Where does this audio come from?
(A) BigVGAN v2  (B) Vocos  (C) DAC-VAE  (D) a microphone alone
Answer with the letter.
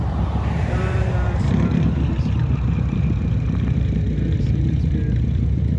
A